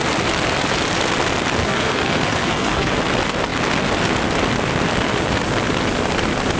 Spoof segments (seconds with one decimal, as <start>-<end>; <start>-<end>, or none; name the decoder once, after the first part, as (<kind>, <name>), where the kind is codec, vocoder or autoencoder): 1.6-2.9 (codec, SNAC)